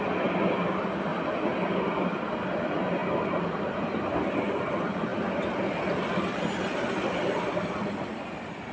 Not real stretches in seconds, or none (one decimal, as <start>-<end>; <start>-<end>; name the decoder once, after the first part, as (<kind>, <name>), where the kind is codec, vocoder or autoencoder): none